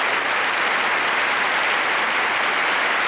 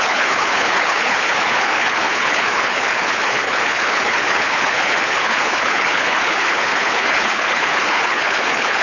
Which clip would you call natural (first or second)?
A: first